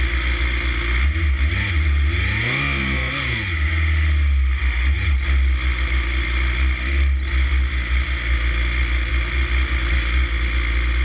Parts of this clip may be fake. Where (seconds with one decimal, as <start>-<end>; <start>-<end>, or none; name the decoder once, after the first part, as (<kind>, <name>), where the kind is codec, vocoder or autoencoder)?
none